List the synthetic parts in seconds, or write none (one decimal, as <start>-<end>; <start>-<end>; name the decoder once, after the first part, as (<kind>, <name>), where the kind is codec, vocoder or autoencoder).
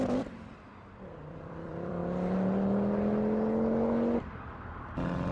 0.0-2.0 (vocoder, BigVGAN v2)